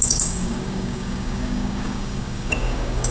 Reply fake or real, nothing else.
fake